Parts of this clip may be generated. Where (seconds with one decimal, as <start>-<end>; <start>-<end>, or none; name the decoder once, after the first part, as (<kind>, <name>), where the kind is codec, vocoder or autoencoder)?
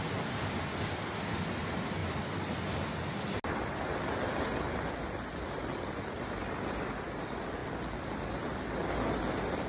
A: none